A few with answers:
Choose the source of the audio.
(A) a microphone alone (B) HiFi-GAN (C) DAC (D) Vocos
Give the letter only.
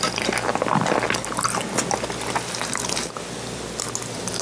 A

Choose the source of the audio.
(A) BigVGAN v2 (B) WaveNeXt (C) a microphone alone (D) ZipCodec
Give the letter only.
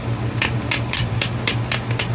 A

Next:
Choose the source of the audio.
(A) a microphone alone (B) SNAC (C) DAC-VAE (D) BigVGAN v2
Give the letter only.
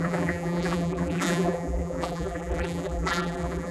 D